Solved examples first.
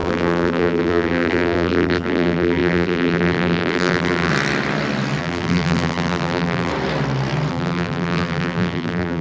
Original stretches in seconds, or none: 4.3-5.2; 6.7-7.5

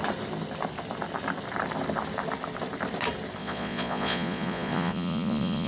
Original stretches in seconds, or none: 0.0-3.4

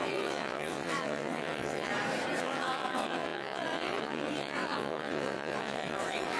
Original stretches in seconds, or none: 1.9-2.4

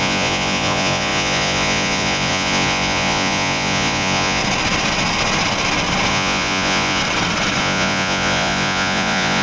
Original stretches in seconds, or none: 4.4-6.1; 7.0-7.6

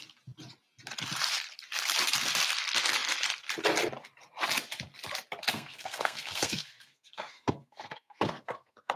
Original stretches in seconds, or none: 0.0-5.5

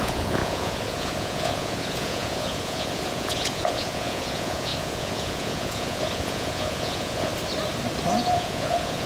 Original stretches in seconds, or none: 7.3-8.2